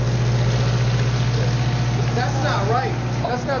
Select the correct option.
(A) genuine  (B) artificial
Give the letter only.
A